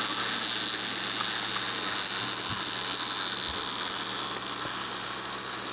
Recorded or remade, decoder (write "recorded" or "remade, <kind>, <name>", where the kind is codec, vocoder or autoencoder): recorded